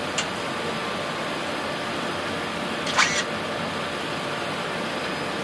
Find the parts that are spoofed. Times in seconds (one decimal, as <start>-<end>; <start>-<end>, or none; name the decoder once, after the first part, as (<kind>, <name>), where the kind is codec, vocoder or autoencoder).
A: none